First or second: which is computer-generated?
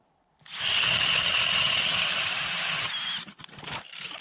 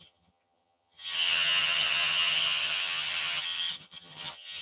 second